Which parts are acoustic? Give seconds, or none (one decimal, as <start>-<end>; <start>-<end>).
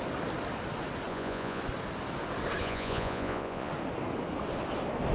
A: 0.0-1.1; 1.6-2.6; 3.7-5.1